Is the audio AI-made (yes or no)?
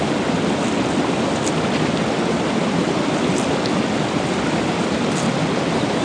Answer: no